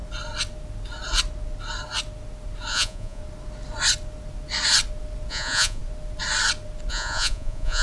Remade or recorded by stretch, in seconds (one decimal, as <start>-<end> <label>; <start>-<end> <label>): 0.0-2.7 recorded; 2.7-3.2 remade; 3.2-5.3 recorded; 5.3-5.8 remade; 5.8-6.9 recorded; 6.9-7.8 remade